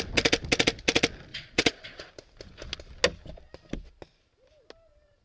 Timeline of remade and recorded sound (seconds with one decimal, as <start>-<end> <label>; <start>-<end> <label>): 0.0-1.3 recorded; 1.3-2.1 remade; 2.1-5.2 recorded